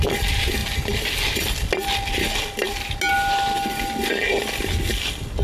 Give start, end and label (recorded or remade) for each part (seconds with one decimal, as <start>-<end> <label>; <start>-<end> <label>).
0.0-5.4 recorded